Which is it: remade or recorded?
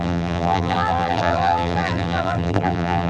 remade